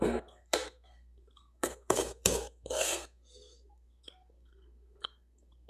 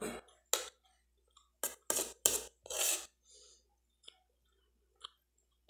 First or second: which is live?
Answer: second